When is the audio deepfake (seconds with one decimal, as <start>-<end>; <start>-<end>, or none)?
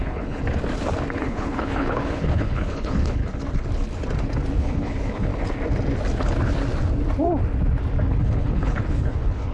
0.0-0.4; 1.2-3.2; 4.6-5.3; 8.1-9.5